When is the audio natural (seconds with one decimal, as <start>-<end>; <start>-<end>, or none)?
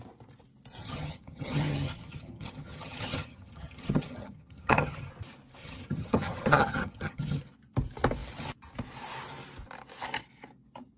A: 0.0-0.8; 5.1-5.6; 7.4-11.0